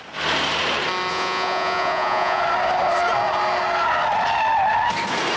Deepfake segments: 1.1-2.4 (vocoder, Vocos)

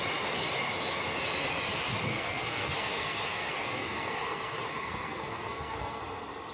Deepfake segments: 2.1-6.0 (codec, SNAC)

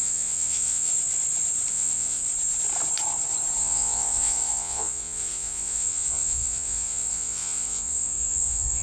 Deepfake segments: 0.0-0.9 (vocoder, Vocos); 1.7-2.2; 3.6-8.8

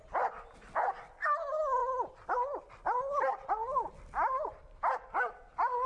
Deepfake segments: none

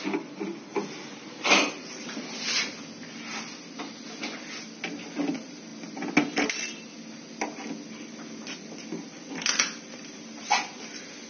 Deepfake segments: none

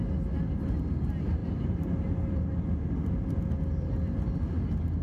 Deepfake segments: none

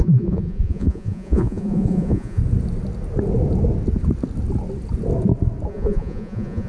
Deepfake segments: 0.0-2.4 (vocoder, Vocos); 5.7-6.7

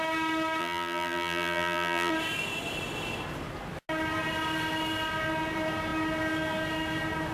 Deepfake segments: 0.6-2.1 (vocoder, BigVGAN v2)